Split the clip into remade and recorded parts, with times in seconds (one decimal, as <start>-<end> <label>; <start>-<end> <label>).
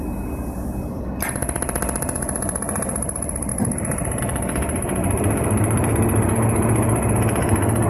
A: 0.0-5.0 recorded; 5.0-5.9 remade; 5.9-7.9 recorded